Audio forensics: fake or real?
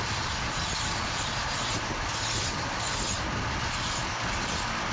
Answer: fake